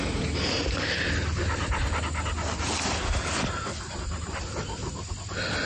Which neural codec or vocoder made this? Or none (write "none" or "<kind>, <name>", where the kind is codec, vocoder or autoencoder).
none